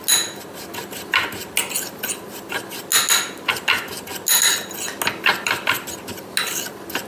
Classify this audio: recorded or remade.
recorded